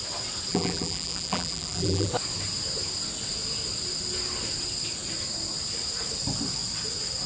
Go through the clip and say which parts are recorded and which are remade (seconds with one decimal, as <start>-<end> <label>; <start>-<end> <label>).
0.0-0.5 recorded; 0.5-2.1 remade; 2.1-7.3 recorded